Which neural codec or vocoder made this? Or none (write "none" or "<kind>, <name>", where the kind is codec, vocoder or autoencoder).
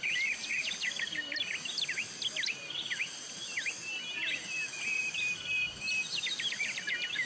vocoder, BigVGAN v2